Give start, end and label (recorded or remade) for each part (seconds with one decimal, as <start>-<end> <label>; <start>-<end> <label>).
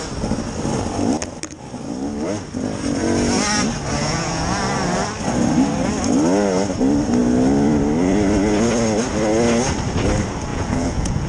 0.0-4.0 recorded; 4.0-4.6 remade; 4.6-10.5 recorded; 10.5-11.3 remade